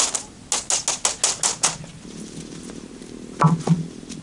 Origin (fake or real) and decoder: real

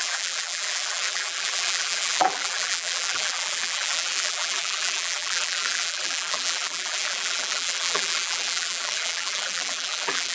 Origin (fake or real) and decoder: fake, vocoder, BigVGAN v2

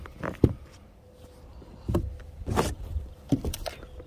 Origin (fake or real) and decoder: fake, vocoder, BigVGAN v2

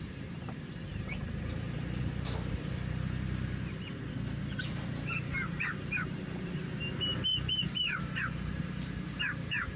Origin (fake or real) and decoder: fake, vocoder, BigVGAN v2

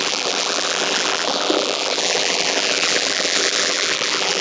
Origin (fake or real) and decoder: fake, vocoder, BigVGAN v2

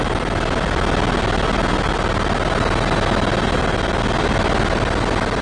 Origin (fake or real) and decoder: real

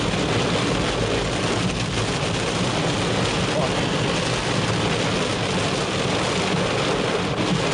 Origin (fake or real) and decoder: real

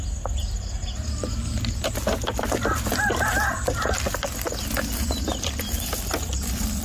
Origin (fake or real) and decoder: real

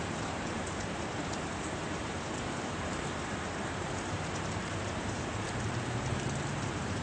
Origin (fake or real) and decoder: fake, vocoder, BigVGAN v2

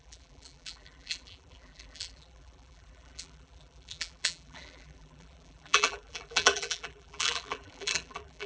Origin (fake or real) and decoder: fake, vocoder, BigVGAN v2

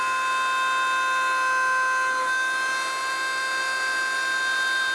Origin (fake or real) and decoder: real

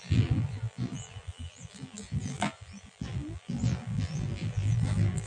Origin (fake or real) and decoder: fake, vocoder, BigVGAN v2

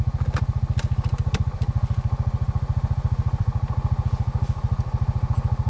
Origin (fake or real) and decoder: real